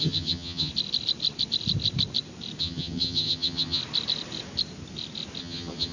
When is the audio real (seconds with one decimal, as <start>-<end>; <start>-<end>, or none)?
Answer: 0.7-2.6; 3.8-5.4